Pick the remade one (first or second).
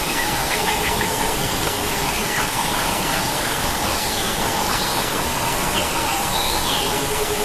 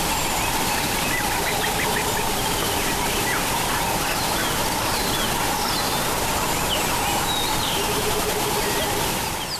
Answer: first